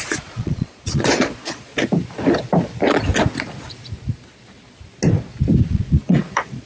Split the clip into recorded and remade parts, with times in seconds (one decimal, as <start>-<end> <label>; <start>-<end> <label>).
0.0-1.7 remade; 1.7-5.7 recorded; 5.7-6.7 remade